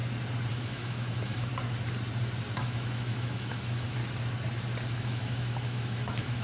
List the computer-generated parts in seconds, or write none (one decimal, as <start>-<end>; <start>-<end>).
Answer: 0.5-1.5; 2.6-4.0; 4.9-6.4